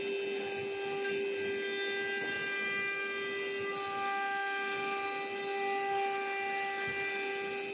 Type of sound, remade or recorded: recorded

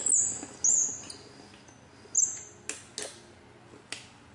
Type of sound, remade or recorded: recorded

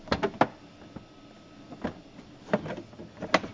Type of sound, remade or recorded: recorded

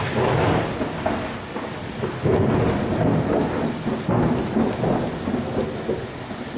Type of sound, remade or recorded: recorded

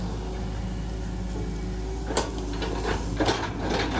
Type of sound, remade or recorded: recorded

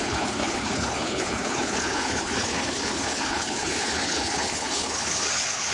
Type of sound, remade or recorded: remade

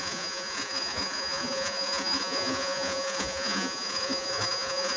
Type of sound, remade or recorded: remade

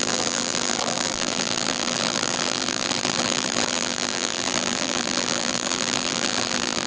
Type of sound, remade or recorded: remade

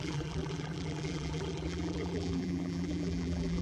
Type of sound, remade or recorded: remade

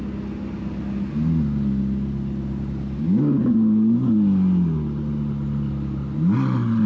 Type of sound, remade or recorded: recorded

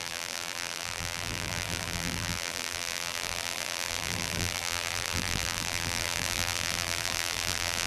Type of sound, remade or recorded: remade